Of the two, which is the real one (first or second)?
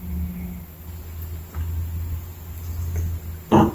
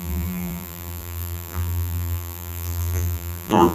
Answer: first